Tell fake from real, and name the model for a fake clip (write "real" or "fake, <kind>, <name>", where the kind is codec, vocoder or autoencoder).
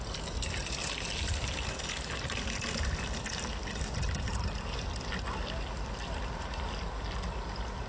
real